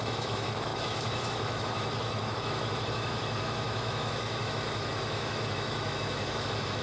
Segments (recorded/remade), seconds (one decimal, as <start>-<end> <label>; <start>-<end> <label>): 0.0-6.8 remade